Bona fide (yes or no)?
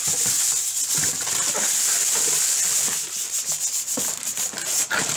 yes